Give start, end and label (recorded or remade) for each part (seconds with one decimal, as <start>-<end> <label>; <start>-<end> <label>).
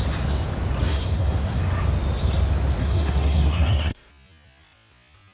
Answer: 0.0-0.8 recorded; 0.8-1.6 remade; 1.6-2.8 recorded; 2.8-4.1 remade; 4.1-5.3 recorded